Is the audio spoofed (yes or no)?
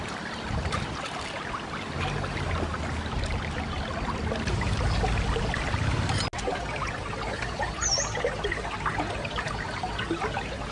no